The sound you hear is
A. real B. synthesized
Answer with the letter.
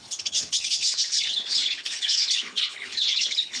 B